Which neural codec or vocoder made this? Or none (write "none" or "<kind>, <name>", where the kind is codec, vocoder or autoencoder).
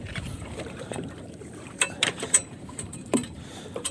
vocoder, BigVGAN v2